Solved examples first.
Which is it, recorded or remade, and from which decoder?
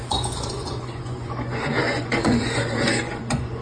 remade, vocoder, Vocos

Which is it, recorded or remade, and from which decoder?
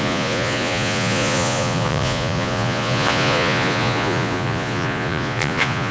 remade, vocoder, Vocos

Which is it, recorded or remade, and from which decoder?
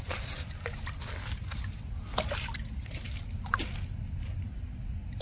recorded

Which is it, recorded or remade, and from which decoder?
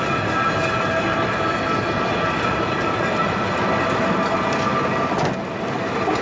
recorded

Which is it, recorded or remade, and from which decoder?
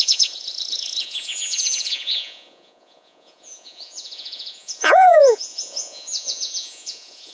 remade, vocoder, Vocos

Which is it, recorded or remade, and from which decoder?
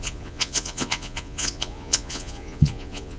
remade, vocoder, Vocos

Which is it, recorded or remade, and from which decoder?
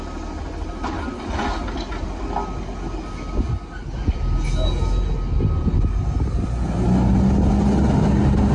recorded